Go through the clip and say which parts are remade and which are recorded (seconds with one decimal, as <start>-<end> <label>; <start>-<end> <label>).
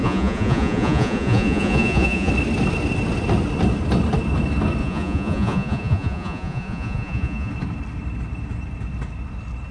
0.0-2.3 remade; 2.3-4.8 recorded; 4.8-7.5 remade; 7.5-9.7 recorded